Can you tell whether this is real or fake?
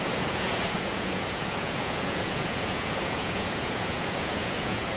fake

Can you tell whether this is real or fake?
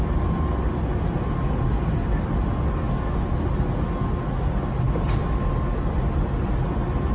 real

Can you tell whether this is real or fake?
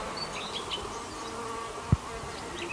real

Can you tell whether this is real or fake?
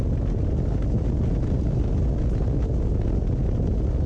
real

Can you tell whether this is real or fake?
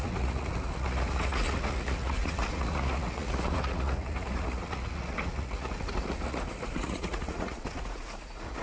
fake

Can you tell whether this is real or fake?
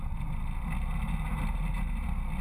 real